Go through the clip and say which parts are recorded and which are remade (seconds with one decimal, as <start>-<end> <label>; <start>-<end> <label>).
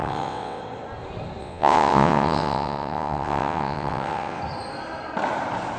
0.0-0.6 remade; 0.6-1.4 recorded; 1.4-4.4 remade; 4.4-5.8 recorded